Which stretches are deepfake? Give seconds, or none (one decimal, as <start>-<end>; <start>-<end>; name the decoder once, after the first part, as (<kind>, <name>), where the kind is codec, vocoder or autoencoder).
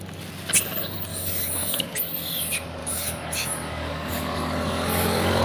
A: 1.1-2.0 (codec, DAC); 2.8-5.4